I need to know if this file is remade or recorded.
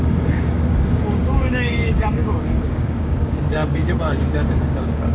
remade